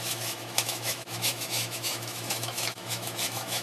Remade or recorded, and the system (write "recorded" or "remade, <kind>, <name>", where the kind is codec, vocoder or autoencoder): remade, autoencoder, DAC-VAE